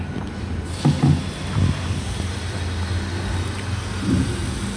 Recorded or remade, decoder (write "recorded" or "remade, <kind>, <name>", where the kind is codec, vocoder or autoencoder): recorded